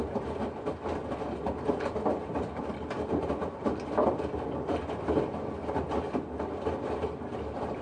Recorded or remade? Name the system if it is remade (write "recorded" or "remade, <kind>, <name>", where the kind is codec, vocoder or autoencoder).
recorded